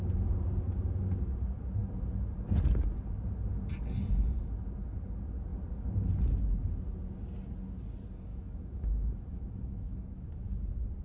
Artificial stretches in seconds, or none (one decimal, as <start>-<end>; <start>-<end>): 8.3-10.4